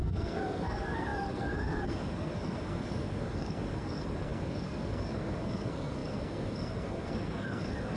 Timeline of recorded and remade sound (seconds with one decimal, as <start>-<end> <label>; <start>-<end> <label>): 0.0-8.0 remade